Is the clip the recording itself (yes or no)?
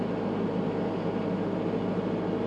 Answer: yes